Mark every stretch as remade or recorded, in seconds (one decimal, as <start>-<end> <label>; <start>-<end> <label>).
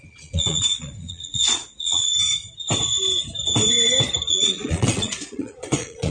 0.0-2.1 remade; 2.1-4.3 recorded; 4.3-6.1 remade